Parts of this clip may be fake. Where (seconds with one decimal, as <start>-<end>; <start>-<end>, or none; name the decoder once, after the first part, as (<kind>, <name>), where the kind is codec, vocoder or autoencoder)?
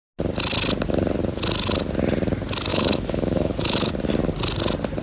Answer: 2.7-3.9 (autoencoder, DAC-VAE)